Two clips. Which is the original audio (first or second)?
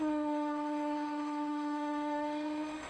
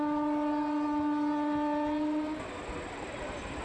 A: second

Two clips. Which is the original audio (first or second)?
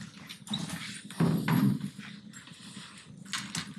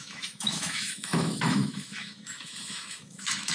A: first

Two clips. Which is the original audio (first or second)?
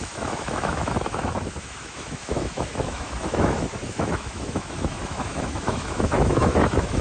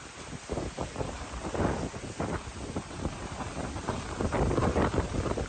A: second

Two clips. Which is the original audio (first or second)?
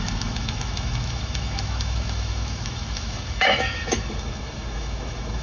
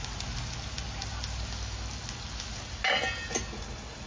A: second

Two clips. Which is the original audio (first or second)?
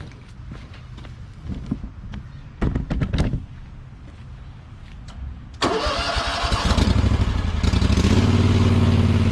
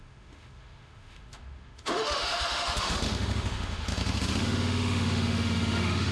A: first